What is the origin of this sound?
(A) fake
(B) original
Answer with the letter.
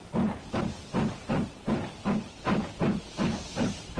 B